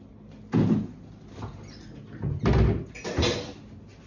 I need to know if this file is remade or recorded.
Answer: recorded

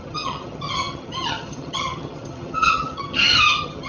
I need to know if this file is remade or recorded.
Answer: remade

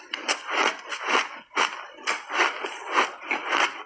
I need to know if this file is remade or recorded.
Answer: recorded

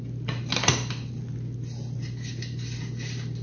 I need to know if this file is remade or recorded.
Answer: recorded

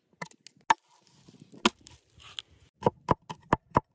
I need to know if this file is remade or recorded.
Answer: recorded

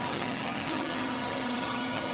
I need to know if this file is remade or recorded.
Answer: remade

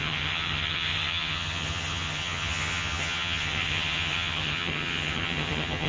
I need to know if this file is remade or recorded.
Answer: remade